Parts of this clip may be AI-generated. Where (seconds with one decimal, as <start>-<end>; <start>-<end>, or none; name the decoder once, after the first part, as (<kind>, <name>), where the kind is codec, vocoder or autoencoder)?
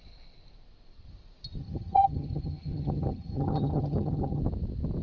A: 1.6-4.4 (vocoder, HiFi-GAN)